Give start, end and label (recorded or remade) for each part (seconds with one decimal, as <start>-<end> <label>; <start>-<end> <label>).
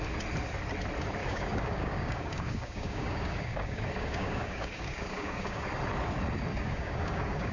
0.0-1.2 recorded; 1.2-5.7 remade; 5.7-6.5 recorded; 6.5-7.5 remade